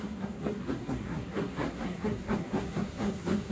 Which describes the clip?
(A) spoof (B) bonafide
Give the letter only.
A